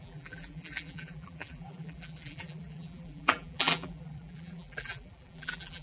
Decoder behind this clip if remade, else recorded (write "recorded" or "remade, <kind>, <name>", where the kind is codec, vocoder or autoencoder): remade, vocoder, BigVGAN v2